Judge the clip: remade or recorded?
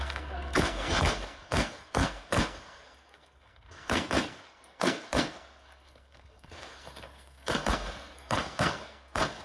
remade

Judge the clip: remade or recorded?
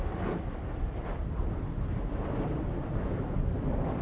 recorded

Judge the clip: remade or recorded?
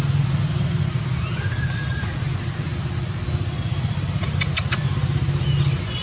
recorded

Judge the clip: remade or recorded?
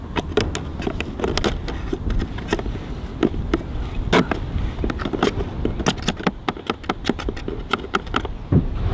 recorded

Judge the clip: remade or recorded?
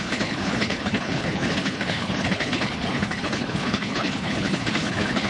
remade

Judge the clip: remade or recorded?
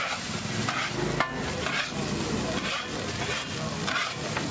recorded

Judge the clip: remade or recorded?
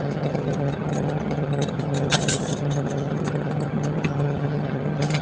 remade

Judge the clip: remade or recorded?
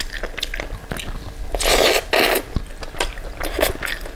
recorded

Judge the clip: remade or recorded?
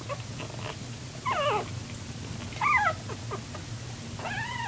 recorded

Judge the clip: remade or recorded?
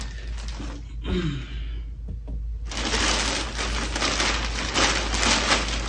recorded